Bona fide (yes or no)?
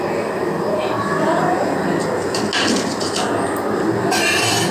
yes